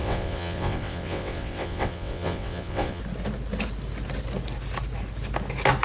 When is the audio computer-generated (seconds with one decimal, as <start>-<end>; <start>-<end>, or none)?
0.0-3.0